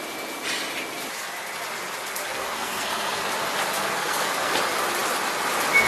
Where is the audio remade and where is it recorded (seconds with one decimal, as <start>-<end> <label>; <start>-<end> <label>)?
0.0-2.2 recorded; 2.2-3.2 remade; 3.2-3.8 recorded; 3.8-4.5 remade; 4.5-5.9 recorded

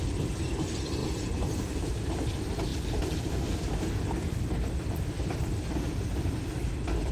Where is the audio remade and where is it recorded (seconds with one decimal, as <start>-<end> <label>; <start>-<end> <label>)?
0.0-2.7 recorded; 2.7-6.6 remade; 6.6-7.1 recorded

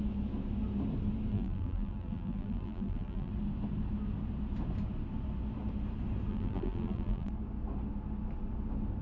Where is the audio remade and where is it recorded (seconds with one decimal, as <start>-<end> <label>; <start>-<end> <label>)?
0.0-1.3 recorded; 1.3-3.3 remade; 3.3-6.3 recorded; 6.3-7.3 remade; 7.3-9.0 recorded

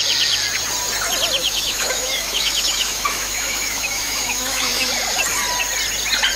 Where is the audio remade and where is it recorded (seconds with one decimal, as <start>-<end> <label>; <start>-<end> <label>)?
0.0-1.4 recorded; 1.4-4.9 remade; 4.9-6.4 recorded

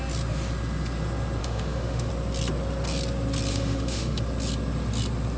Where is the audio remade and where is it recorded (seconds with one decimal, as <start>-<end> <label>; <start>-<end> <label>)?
0.0-1.4 recorded; 1.4-2.1 remade; 2.1-3.5 recorded; 3.5-4.2 remade; 4.2-5.4 recorded

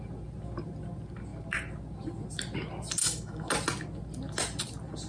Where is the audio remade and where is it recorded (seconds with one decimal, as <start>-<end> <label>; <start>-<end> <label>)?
0.0-3.0 recorded; 3.0-3.5 remade; 3.5-5.1 recorded

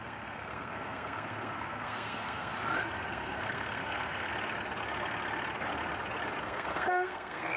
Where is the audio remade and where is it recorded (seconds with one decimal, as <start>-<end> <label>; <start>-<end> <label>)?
0.0-2.5 remade; 2.5-3.1 recorded; 3.1-4.3 remade; 4.3-6.4 recorded; 6.4-7.6 remade

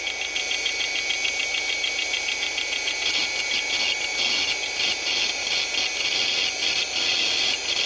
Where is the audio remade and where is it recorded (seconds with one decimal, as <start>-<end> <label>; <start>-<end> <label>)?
0.0-7.9 recorded